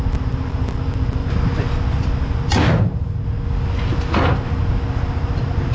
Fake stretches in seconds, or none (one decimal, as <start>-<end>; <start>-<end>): none